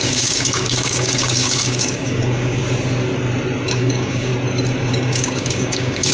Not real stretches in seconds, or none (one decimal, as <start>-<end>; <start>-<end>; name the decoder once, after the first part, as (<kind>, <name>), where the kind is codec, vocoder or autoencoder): 0.0-2.6 (codec, DAC); 3.7-4.3; 4.9-6.1